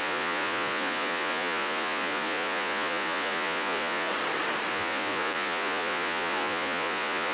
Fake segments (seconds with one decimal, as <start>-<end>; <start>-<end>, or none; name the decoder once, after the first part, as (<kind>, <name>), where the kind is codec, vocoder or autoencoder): 0.0-4.1 (vocoder, Vocos); 4.7-7.3